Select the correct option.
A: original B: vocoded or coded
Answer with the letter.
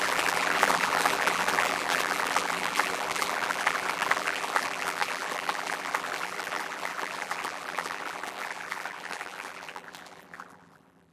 B